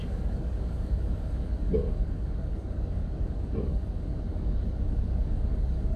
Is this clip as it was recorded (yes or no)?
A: no